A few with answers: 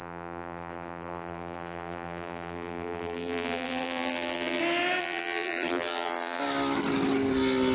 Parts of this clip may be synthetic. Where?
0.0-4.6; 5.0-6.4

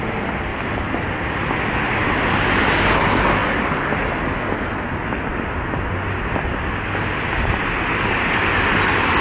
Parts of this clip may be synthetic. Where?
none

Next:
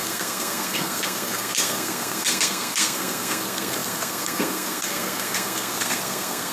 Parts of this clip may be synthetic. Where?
0.0-6.5

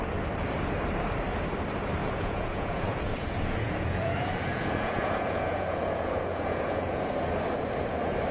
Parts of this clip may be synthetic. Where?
2.0-7.0